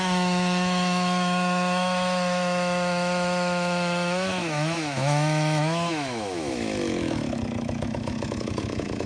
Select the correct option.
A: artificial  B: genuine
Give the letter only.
A